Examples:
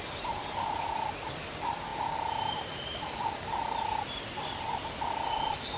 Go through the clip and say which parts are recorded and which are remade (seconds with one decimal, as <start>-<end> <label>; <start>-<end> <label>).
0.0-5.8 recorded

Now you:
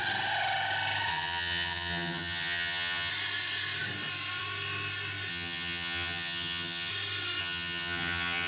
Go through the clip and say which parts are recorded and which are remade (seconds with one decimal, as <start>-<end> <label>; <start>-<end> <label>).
0.0-1.1 recorded; 1.1-3.1 remade; 3.1-5.3 recorded; 5.3-6.9 remade; 6.9-7.4 recorded; 7.4-8.5 remade

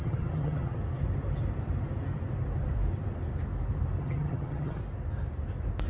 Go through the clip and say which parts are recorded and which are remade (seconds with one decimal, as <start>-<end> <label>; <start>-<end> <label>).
0.0-0.8 remade; 0.8-4.0 recorded; 4.0-4.8 remade; 4.8-5.9 recorded